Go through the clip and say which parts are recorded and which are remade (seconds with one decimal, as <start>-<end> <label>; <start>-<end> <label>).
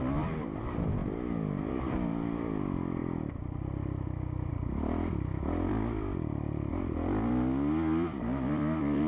0.0-1.0 remade; 1.0-1.7 recorded; 1.7-3.0 remade; 3.0-4.5 recorded; 4.5-9.1 remade